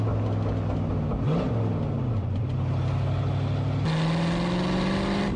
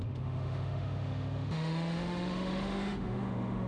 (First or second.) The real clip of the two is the first